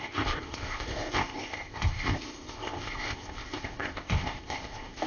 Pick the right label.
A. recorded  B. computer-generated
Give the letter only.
B